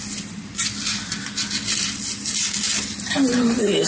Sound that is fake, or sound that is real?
real